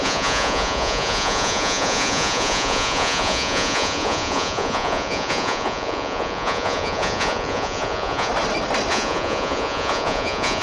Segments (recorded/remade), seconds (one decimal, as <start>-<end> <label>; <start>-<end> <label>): 0.0-8.3 remade; 8.3-8.9 recorded; 8.9-10.6 remade